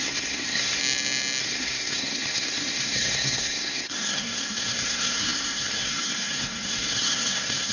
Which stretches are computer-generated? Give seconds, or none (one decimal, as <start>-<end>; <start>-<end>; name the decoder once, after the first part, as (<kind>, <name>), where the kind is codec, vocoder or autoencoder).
0.0-0.8 (codec, SNAC); 1.4-7.7